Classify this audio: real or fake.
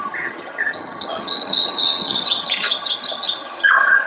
fake